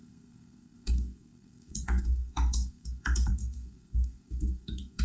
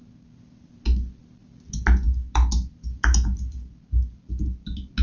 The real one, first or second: second